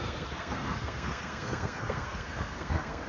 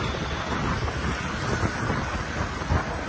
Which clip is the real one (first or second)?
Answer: second